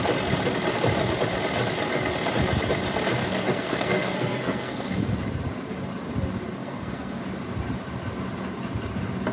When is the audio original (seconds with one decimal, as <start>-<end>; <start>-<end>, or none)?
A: 0.0-3.2; 5.1-6.6; 7.2-9.3